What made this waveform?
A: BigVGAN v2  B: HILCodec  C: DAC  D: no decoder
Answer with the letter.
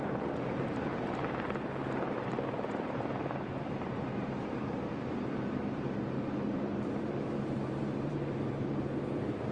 A